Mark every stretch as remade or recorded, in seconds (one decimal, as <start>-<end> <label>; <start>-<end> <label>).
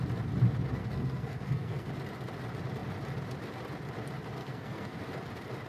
0.0-0.8 recorded; 0.8-1.9 remade; 1.9-4.4 recorded; 4.4-5.0 remade; 5.0-5.7 recorded